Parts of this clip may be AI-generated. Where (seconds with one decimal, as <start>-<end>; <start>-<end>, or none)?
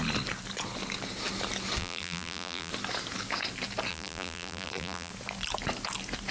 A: 1.8-2.7; 3.9-5.1